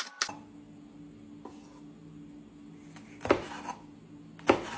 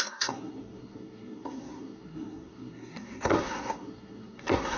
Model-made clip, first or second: second